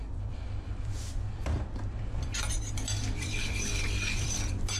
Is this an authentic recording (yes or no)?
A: no